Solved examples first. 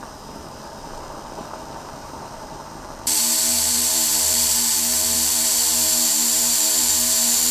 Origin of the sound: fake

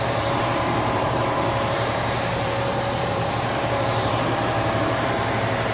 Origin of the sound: fake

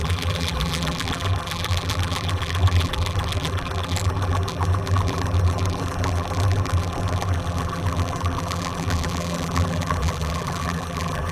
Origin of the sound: fake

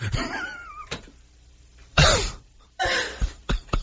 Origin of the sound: fake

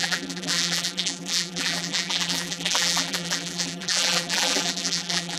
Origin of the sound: fake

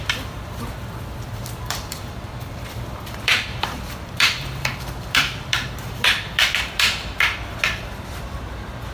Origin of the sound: fake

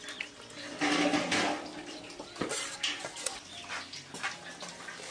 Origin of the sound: real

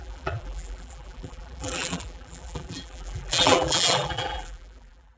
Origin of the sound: fake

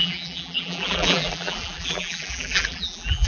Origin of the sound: fake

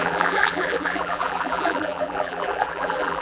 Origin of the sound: fake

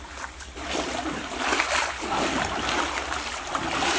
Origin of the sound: real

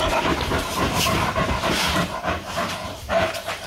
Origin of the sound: fake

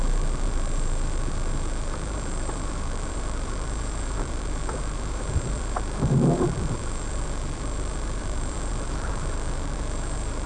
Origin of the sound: fake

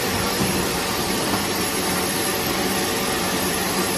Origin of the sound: fake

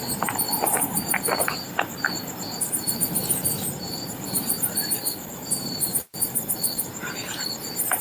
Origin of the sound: fake